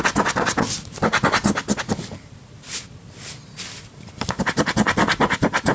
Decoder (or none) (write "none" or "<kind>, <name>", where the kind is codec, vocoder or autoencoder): none